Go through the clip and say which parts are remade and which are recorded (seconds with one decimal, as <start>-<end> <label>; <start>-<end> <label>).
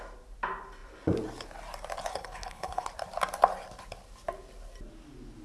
0.0-2.1 recorded; 2.1-2.9 remade; 2.9-5.4 recorded